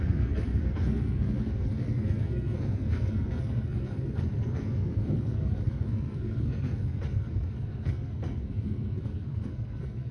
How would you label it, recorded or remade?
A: remade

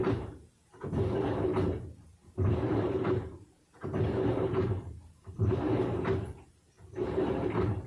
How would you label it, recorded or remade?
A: remade